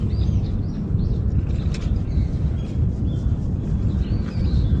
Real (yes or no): yes